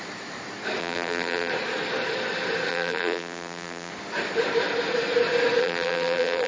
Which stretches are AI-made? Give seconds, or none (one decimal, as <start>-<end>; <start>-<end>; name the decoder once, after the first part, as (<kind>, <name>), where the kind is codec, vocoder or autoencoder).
0.8-1.5 (vocoder, BigVGAN v2); 2.7-3.9; 5.6-6.5